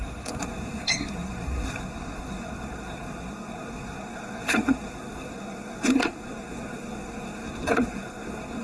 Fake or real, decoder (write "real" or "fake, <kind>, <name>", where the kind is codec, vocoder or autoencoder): fake, codec, SNAC